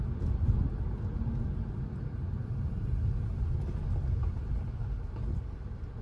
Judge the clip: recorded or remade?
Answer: recorded